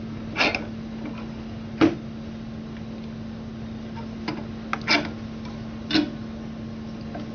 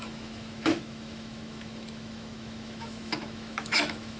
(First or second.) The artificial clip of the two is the second